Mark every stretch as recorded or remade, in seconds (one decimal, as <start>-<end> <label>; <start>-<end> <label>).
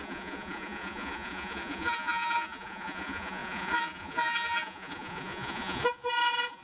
0.0-6.6 remade